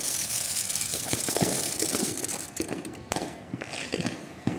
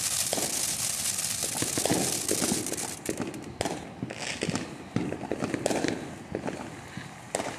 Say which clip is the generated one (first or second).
first